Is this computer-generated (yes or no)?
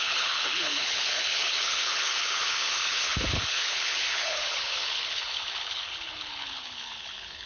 yes